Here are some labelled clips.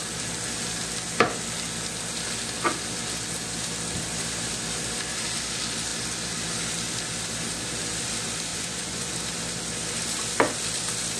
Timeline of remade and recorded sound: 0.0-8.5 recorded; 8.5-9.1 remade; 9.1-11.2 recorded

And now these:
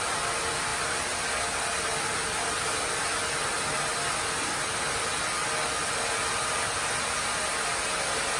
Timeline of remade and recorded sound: 0.0-8.4 recorded

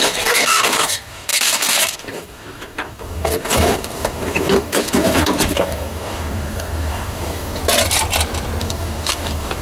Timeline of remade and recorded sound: 0.0-7.6 remade; 7.6-8.6 recorded; 8.6-9.6 remade

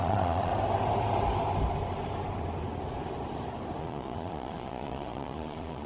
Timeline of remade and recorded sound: 0.0-0.5 remade; 0.5-3.8 recorded; 3.8-5.9 remade

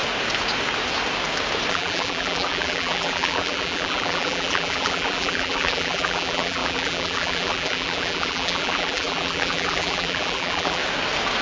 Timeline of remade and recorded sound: 0.0-1.7 recorded; 1.7-10.8 remade; 10.8-11.4 recorded

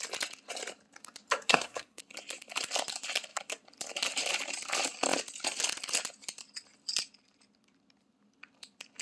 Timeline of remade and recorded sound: 0.0-1.5 recorded; 1.5-2.0 remade; 2.0-9.0 recorded